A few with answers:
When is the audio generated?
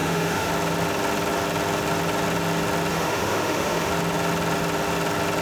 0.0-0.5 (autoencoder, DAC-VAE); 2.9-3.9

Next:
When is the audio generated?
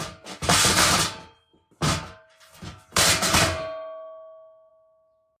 none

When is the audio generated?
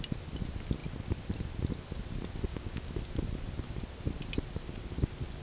2.5-3.0 (autoencoder, DAC-VAE)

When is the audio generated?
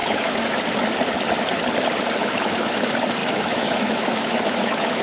0.0-0.6 (autoencoder, DAC-VAE); 2.2-2.8; 3.2-5.0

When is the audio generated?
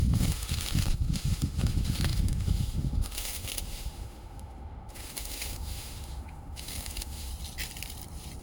0.0-7.3 (autoencoder, DAC-VAE)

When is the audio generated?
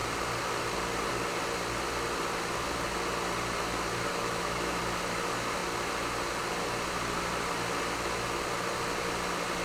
4.1-4.8 (autoencoder, DAC-VAE)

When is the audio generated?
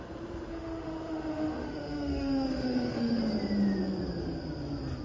0.5-3.2 (autoencoder, DAC-VAE)